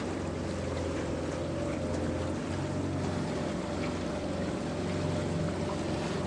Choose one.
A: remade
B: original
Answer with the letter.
B